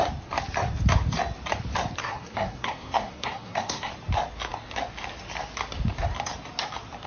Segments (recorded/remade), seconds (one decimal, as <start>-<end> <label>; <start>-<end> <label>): 0.0-2.0 recorded; 2.0-3.9 remade; 3.9-7.1 recorded